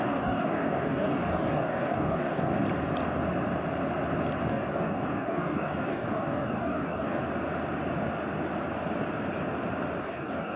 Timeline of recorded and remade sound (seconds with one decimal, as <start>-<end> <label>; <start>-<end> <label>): 0.0-2.5 remade; 2.5-4.5 recorded; 4.5-7.2 remade; 7.2-10.0 recorded; 10.0-10.6 remade